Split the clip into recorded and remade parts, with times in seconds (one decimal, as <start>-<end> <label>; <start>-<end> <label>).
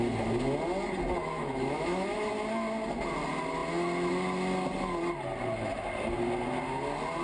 0.0-1.2 recorded; 1.2-2.3 remade; 2.3-7.2 recorded